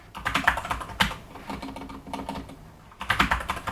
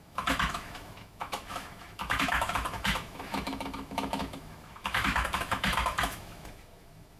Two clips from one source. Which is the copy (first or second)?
second